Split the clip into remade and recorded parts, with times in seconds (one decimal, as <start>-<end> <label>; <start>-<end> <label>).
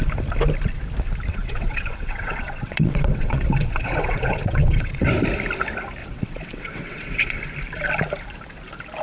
0.0-1.3 recorded; 1.3-5.0 remade; 5.0-6.0 recorded; 6.0-7.4 remade; 7.4-9.0 recorded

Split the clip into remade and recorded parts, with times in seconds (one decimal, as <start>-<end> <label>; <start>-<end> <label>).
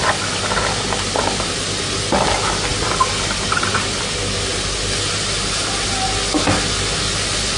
0.0-7.6 recorded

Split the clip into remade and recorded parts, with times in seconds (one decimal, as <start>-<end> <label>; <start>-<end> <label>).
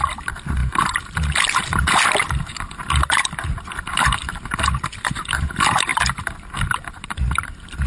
0.0-7.9 recorded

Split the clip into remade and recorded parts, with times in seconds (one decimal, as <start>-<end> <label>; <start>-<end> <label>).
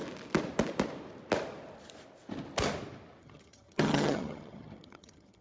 0.0-3.2 recorded; 3.2-5.4 remade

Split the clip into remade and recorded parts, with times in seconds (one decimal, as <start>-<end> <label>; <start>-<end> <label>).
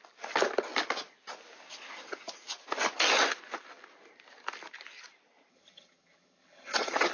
0.0-5.5 recorded; 5.5-7.1 remade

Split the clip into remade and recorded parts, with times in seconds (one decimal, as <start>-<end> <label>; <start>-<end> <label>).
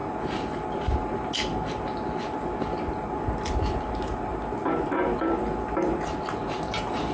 0.0-7.1 recorded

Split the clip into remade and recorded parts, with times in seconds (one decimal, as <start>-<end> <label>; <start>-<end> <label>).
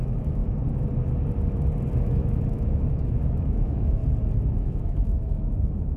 0.0-0.4 remade; 0.4-2.0 recorded; 2.0-4.0 remade; 4.0-4.5 recorded; 4.5-6.0 remade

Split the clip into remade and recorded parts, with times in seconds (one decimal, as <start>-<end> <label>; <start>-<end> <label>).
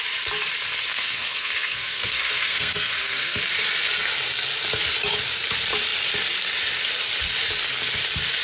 0.0-0.9 recorded; 0.9-3.4 remade; 3.4-8.4 recorded